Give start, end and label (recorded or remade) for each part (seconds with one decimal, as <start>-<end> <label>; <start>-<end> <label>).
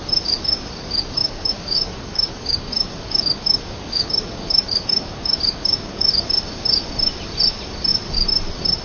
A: 0.0-1.2 recorded; 1.2-6.2 remade; 6.2-8.8 recorded